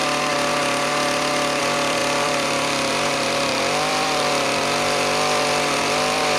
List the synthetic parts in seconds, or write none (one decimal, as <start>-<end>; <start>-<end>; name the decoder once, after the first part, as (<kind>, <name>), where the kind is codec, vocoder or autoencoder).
1.6-6.4 (vocoder, BigVGAN v2)